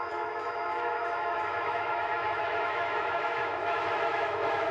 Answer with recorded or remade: remade